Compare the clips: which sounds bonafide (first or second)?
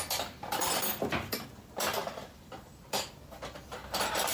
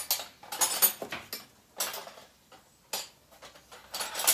second